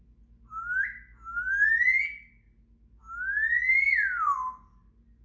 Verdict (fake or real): real